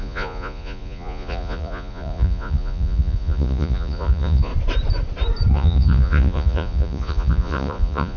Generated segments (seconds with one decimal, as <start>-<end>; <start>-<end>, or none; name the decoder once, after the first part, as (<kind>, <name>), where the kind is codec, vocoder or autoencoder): 0.0-4.5 (vocoder, Vocos); 5.5-8.2